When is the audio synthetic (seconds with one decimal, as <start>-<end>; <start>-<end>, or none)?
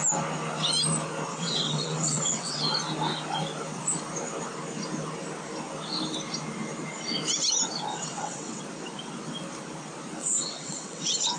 1.3-2.6; 7.9-8.6; 10.2-11.4